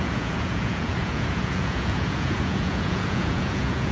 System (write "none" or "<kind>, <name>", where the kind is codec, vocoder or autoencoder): vocoder, Vocos